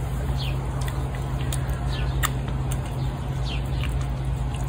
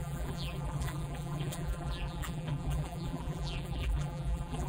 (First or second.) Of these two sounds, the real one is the first